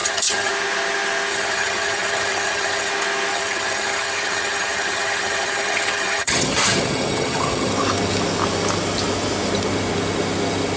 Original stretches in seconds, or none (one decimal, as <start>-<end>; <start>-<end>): 0.5-1.3; 2.9-3.3; 7.7-10.8